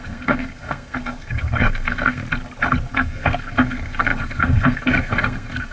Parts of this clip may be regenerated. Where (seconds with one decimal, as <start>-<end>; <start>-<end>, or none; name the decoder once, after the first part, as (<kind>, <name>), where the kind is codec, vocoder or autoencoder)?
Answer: 0.0-2.2 (codec, SNAC); 2.9-5.7